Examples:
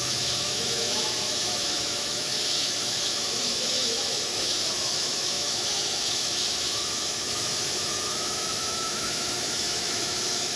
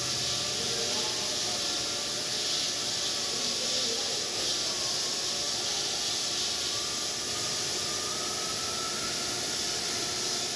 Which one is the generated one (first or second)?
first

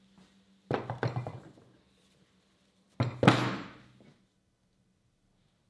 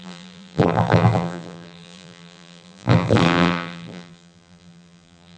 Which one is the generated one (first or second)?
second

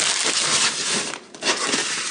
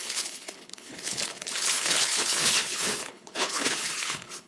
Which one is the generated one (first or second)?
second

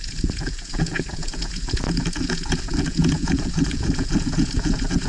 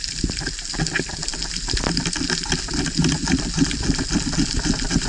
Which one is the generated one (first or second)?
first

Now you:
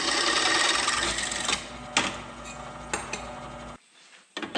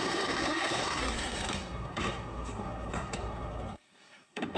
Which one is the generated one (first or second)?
second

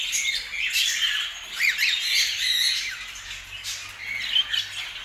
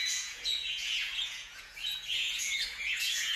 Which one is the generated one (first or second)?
second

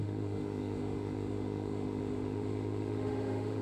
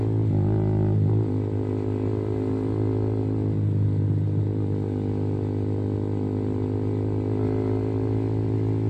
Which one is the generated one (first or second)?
first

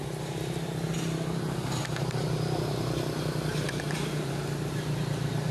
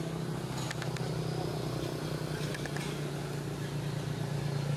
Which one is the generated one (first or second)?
first